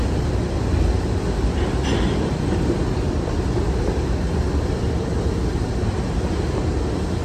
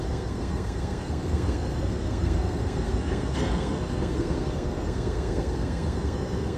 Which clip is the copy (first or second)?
second